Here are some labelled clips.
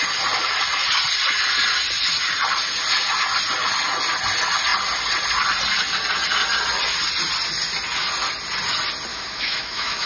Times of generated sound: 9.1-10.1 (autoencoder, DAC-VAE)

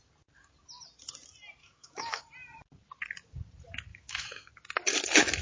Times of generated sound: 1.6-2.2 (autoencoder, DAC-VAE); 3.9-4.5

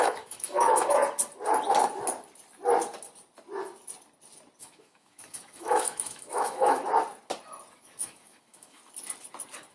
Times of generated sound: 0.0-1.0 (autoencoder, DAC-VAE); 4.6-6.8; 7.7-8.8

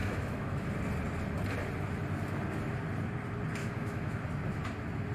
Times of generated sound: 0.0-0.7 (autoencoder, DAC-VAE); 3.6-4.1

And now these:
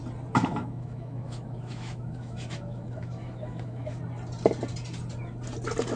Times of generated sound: 0.4-4.0 (autoencoder, DAC-VAE)

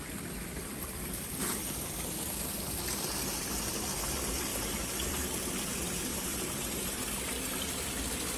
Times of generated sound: none

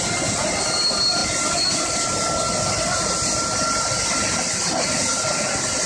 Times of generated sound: none

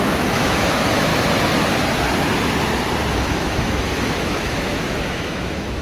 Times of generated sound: 0.0-1.1 (autoencoder, DAC-VAE); 3.1-5.8